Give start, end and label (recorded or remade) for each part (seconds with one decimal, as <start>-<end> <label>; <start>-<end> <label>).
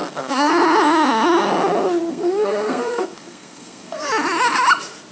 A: 0.0-0.5 remade; 0.5-2.1 recorded; 2.1-4.1 remade; 4.1-5.1 recorded